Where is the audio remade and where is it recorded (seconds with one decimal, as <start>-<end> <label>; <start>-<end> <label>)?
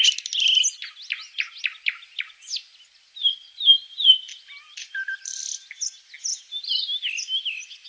0.0-4.8 recorded; 4.8-5.4 remade; 5.4-6.3 recorded; 6.3-6.8 remade; 6.8-7.9 recorded